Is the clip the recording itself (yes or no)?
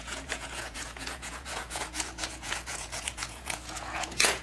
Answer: no